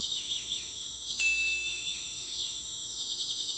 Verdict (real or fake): fake